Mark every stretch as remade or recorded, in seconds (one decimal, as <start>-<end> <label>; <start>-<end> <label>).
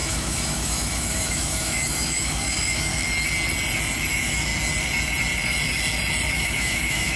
0.0-2.9 remade; 2.9-4.1 recorded; 4.1-4.5 remade; 4.5-6.3 recorded; 6.3-7.2 remade